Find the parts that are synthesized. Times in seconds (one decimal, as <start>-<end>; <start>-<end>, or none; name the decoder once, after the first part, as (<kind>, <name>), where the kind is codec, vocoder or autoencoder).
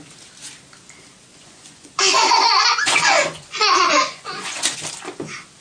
1.4-4.8 (vocoder, Vocos)